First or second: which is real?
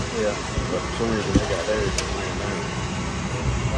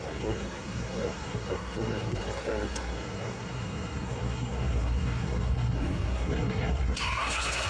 first